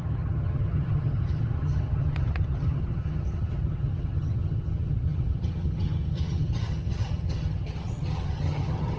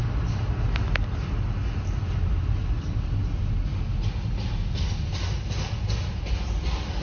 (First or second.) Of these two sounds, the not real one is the first